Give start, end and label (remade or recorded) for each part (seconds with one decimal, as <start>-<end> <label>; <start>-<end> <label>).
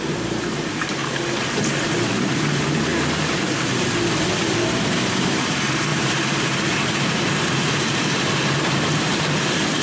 0.0-1.0 remade; 1.0-1.7 recorded; 1.7-2.9 remade; 2.9-4.4 recorded; 4.4-9.8 remade